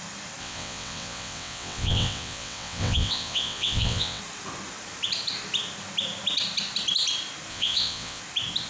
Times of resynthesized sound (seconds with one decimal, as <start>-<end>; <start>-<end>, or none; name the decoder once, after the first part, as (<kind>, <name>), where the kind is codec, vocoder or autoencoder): 0.4-4.2 (vocoder, WaveNeXt); 7.5-8.2